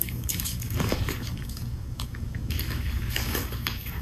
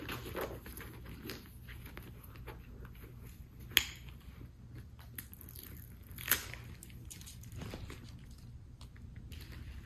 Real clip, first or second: second